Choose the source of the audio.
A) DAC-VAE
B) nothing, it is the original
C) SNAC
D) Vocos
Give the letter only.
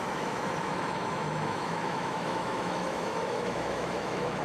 A